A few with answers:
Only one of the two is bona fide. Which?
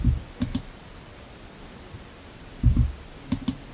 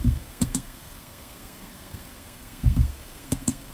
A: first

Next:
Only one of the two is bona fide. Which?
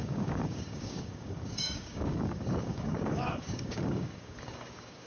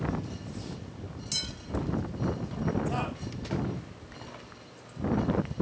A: second